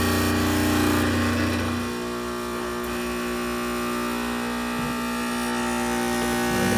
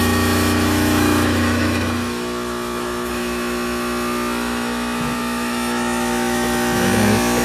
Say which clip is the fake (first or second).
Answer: second